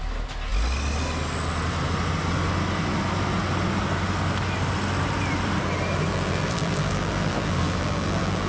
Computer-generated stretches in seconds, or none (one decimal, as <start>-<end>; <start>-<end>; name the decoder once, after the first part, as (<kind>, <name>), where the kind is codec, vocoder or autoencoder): 6.1-8.5 (vocoder, BigVGAN v2)